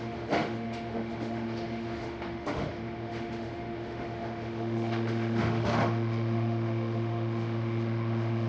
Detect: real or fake fake